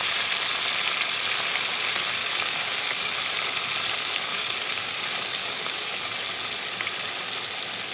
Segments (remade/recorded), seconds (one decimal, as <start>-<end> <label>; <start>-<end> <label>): 0.0-2.2 recorded; 2.2-3.1 remade; 3.1-4.3 recorded; 4.3-4.9 remade; 4.9-5.4 recorded; 5.4-6.3 remade; 6.3-7.9 recorded